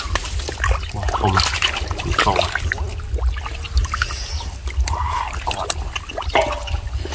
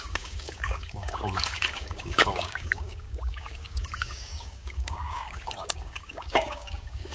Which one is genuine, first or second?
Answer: first